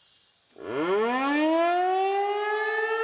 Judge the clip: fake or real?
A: real